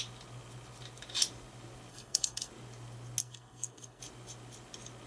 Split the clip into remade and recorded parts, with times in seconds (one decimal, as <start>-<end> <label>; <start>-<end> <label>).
0.0-1.9 recorded; 1.9-2.5 remade; 2.5-3.2 recorded; 3.2-4.0 remade; 4.0-5.1 recorded